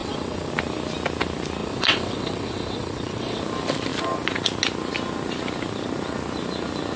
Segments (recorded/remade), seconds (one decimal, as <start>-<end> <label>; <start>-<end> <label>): 0.0-0.5 remade; 0.5-1.6 recorded; 1.6-3.4 remade; 3.4-7.0 recorded